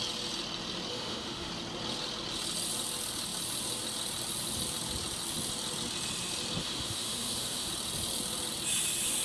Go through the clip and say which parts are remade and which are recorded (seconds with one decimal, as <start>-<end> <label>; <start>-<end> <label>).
0.0-0.9 recorded; 0.9-1.5 remade; 1.5-6.6 recorded; 6.6-7.7 remade; 7.7-9.2 recorded